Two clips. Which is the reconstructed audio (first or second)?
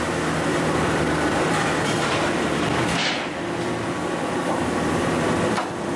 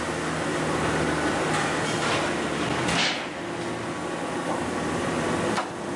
first